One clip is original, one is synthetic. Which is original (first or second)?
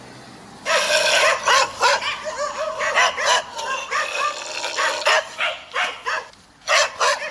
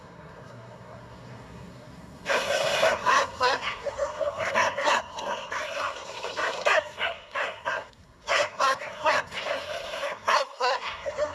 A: first